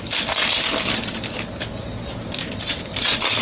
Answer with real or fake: real